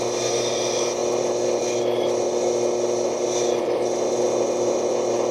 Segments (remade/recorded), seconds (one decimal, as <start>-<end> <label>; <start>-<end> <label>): 0.0-5.3 recorded